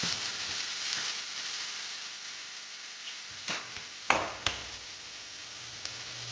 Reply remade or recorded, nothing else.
recorded